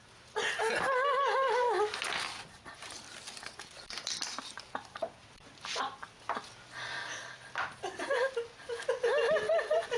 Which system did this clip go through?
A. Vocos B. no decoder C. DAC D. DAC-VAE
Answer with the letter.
B